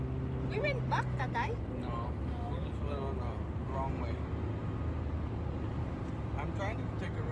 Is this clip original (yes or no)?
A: yes